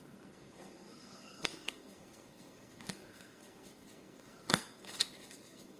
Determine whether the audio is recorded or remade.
remade